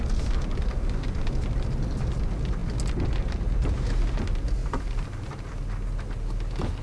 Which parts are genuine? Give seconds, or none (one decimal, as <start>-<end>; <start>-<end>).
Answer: 0.0-2.6; 3.1-4.6; 5.6-6.8